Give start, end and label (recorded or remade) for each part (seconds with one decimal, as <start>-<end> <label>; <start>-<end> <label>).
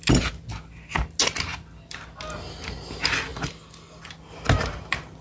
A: 0.0-5.2 recorded